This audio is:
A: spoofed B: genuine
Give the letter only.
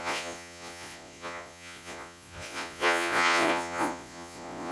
A